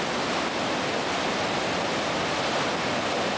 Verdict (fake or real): real